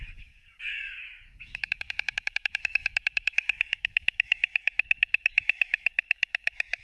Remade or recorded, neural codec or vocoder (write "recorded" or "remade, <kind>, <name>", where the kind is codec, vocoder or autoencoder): remade, codec, DAC